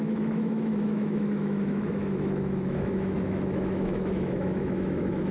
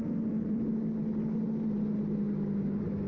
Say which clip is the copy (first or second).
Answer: first